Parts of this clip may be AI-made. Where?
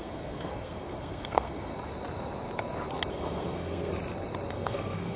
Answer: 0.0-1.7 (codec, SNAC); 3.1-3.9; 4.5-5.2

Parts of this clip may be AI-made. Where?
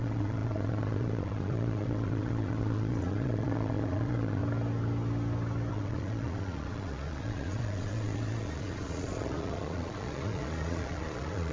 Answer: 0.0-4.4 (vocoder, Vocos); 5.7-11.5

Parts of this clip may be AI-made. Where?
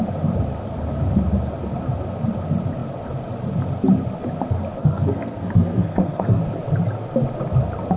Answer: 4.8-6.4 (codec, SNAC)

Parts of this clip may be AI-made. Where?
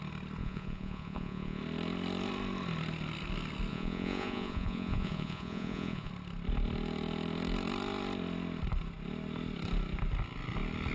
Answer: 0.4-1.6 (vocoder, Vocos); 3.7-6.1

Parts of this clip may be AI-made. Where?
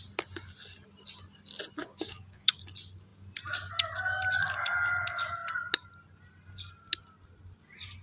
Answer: 1.8-2.6 (codec, DAC)